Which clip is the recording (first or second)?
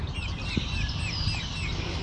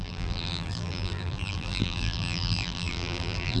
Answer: first